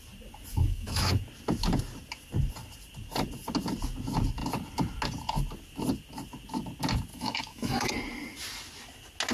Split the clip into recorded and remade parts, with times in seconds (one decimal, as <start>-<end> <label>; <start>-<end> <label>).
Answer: 0.0-0.5 recorded; 0.5-1.1 remade; 1.1-7.1 recorded; 7.1-7.9 remade; 7.9-9.3 recorded